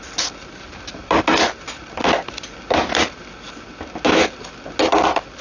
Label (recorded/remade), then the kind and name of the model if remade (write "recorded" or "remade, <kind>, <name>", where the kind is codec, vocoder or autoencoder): recorded